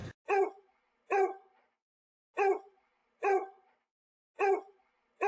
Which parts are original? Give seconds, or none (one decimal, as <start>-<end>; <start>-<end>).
0.0-3.0; 3.7-5.3